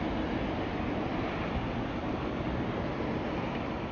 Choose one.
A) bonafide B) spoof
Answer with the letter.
A